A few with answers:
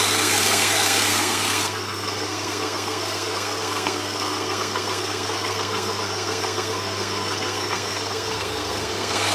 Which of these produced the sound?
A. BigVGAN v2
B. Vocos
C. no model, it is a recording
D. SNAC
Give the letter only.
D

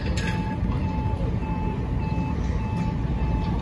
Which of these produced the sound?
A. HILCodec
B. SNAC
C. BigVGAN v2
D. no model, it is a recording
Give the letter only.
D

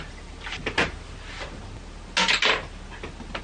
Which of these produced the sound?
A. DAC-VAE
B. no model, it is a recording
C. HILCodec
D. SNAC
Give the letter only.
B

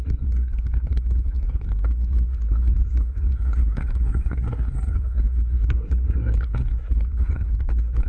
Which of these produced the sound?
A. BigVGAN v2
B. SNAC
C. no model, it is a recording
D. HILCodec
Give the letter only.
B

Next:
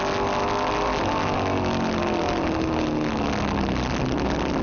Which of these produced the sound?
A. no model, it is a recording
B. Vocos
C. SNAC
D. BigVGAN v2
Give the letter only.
A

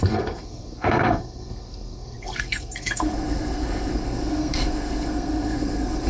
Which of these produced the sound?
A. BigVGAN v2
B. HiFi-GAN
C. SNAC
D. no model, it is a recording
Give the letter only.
C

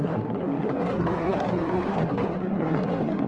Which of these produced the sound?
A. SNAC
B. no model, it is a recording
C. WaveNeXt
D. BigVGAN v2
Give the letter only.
A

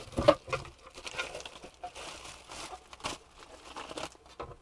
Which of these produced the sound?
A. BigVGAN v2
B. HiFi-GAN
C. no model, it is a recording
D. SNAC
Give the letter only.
C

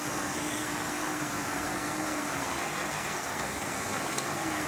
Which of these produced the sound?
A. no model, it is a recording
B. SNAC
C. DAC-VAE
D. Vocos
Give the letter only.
B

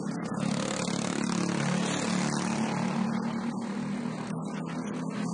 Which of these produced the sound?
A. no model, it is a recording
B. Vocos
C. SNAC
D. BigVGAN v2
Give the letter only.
A